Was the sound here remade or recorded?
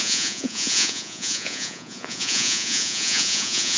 remade